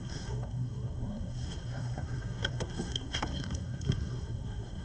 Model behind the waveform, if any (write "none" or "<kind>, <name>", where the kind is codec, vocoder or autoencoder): codec, SNAC